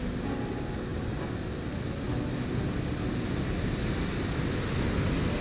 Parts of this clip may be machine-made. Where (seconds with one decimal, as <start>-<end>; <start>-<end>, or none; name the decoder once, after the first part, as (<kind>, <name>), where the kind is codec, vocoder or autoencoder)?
none